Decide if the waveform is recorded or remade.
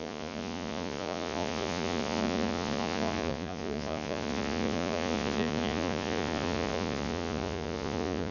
remade